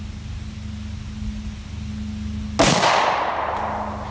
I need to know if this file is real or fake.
real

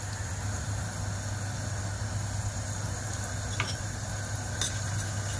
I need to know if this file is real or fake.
real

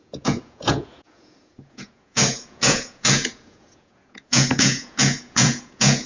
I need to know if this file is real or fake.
fake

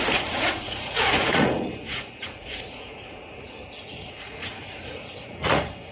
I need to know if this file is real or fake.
fake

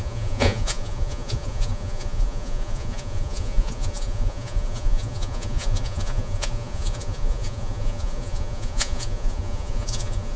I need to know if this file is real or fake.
fake